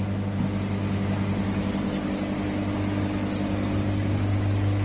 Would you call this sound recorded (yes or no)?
yes